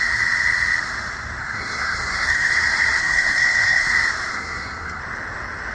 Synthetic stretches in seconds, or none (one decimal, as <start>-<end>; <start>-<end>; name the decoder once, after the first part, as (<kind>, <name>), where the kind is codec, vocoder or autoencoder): 1.4-2.5 (codec, SNAC); 3.0-3.9; 4.3-5.0

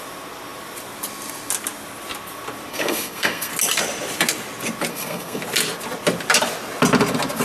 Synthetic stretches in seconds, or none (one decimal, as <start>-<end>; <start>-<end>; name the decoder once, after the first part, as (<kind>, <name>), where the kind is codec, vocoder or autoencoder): 2.7-3.5 (codec, SNAC); 4.9-5.4

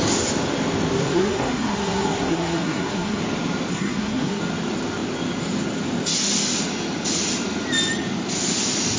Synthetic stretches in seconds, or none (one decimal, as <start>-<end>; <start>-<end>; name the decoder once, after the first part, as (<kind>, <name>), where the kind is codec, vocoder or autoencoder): 1.0-3.2 (codec, SNAC); 3.7-4.4

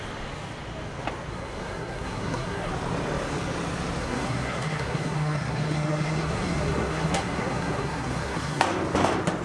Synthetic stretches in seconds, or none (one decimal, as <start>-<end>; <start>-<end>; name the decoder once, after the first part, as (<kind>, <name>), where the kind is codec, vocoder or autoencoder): 1.3-2.7 (codec, SNAC); 4.0-8.6

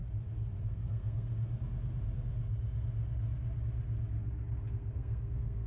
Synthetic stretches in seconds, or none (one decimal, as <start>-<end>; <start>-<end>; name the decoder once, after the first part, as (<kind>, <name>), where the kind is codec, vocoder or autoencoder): 0.6-1.3 (codec, SNAC); 4.7-5.7

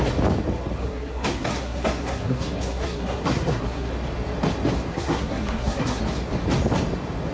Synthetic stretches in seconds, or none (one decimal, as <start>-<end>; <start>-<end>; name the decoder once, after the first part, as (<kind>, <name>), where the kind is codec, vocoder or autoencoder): 0.8-3.9 (codec, SNAC); 4.9-6.0

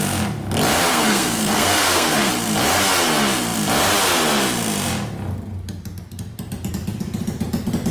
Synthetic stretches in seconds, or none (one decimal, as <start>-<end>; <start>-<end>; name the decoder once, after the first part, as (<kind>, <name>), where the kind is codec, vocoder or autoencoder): 0.9-2.3 (codec, SNAC)